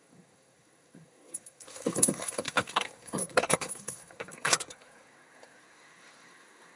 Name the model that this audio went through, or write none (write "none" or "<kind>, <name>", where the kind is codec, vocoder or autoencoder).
codec, SNAC